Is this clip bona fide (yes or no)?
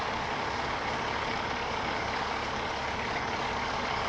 no